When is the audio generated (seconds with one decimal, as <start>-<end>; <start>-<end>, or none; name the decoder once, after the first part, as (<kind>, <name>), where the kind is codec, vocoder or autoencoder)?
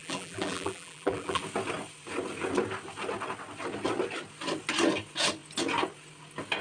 0.0-1.4 (vocoder, BigVGAN v2)